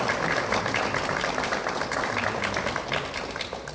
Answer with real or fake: real